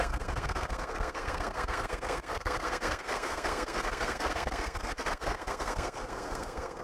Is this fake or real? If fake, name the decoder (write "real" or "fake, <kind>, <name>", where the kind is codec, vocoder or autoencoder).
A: fake, codec, SNAC